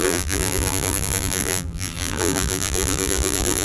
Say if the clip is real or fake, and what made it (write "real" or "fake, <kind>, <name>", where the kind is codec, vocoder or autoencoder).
fake, vocoder, BigVGAN v2